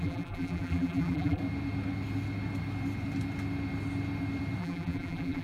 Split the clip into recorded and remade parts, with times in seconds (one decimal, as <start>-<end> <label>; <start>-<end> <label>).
0.0-1.4 remade; 1.4-4.6 recorded; 4.6-5.4 remade